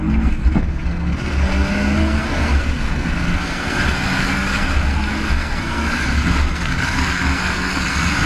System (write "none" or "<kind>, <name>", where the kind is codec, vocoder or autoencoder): codec, SNAC